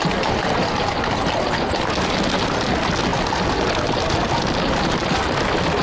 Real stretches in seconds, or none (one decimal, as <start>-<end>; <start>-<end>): 0.0-5.8